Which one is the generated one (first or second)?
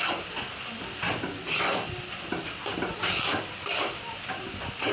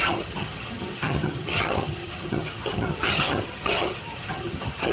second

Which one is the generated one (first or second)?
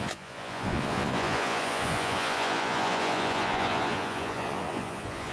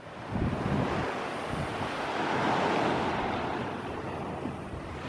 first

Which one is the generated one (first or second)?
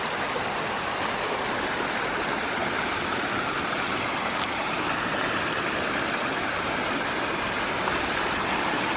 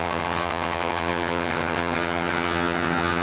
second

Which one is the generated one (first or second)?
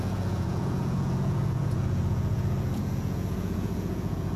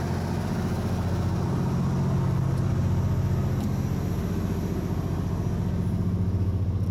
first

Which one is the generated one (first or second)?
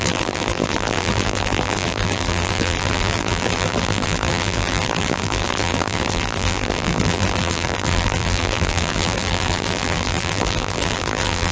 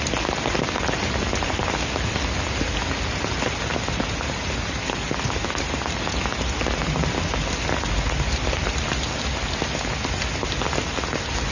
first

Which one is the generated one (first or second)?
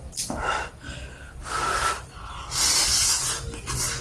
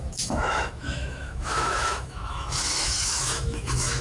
second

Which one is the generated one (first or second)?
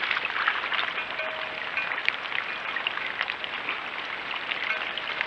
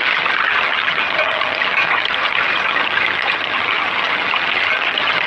second